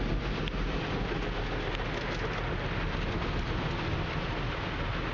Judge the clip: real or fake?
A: real